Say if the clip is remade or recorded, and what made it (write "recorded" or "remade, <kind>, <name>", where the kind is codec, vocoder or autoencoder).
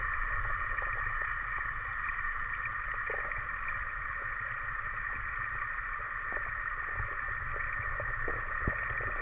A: recorded